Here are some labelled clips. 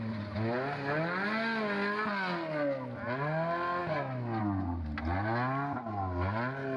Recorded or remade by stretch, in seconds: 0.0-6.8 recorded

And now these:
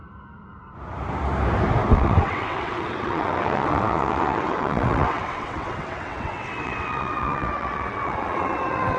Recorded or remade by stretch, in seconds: 0.0-1.9 recorded; 1.9-9.0 remade

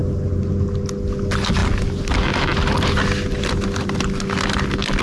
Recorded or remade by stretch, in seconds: 0.0-5.0 recorded